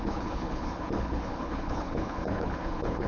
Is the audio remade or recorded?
remade